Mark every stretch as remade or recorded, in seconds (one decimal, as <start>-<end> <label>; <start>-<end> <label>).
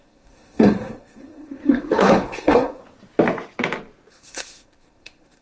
0.0-2.8 remade; 2.8-4.1 recorded; 4.1-5.4 remade